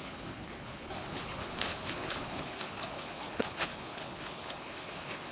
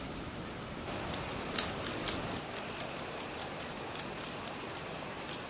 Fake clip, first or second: first